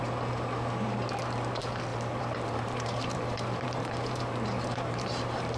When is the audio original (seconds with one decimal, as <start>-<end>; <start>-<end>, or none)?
0.0-1.9